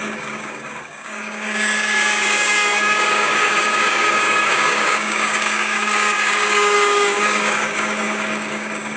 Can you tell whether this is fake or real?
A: fake